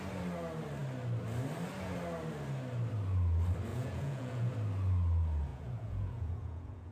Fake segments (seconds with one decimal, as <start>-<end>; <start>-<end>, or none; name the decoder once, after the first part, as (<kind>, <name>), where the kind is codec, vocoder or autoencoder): 3.7-4.5 (vocoder, Vocos); 5.5-6.9

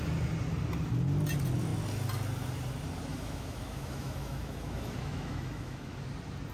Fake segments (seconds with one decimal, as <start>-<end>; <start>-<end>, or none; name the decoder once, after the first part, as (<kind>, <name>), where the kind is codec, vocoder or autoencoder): 3.1-6.1 (autoencoder, DAC-VAE)

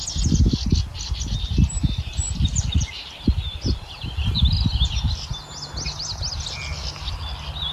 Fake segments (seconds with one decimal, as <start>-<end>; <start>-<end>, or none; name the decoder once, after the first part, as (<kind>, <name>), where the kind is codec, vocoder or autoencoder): 0.9-5.3 (vocoder, BigVGAN v2)

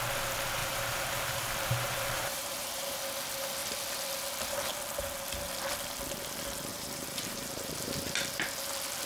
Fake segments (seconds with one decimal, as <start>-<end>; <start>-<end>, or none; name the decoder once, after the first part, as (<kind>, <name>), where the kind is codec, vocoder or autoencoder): 0.6-3.0 (vocoder, BigVGAN v2); 6.7-7.9

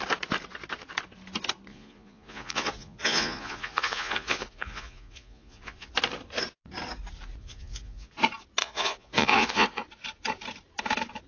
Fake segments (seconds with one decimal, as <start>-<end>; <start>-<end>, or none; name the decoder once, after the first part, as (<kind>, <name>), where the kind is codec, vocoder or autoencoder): 1.7-5.9 (vocoder, Vocos); 7.4-8.1; 8.6-9.8

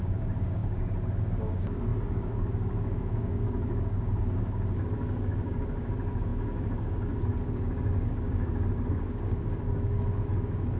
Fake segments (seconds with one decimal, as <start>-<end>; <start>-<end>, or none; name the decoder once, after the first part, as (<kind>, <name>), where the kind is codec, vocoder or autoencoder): 0.0-10.8 (codec, DAC)